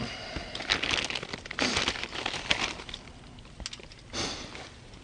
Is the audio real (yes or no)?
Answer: yes